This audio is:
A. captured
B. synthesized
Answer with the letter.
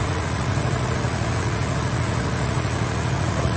B